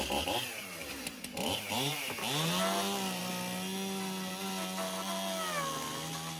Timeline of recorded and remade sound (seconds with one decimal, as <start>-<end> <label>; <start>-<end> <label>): 0.0-0.8 recorded; 0.8-2.1 remade; 2.1-6.4 recorded